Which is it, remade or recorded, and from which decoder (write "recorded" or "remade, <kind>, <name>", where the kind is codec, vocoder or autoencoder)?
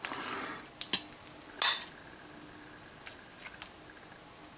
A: recorded